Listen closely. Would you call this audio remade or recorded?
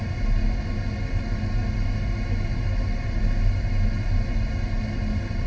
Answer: recorded